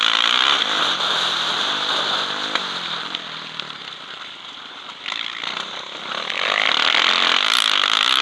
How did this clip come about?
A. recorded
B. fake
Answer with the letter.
B